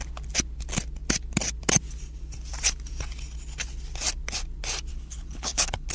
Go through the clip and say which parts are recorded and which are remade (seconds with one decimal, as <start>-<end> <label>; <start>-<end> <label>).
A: 0.0-4.9 recorded; 4.9-5.9 remade